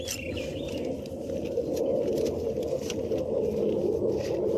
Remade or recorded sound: recorded